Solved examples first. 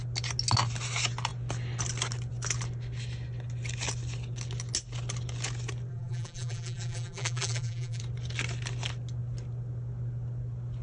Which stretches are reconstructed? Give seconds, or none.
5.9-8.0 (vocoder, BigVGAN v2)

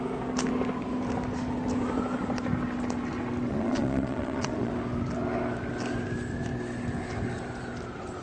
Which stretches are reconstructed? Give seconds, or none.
3.5-4.7 (vocoder, Vocos)

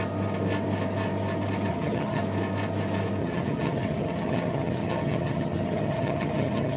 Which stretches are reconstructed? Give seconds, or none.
1.7-2.2 (vocoder, HiFi-GAN); 3.2-6.8

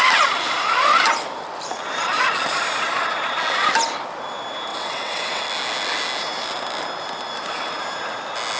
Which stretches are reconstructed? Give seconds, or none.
4.7-5.4 (vocoder, WaveNeXt)

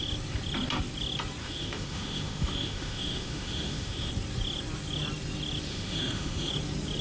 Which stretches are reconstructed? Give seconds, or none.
1.4-4.1 (autoencoder, DAC-VAE); 5.7-6.5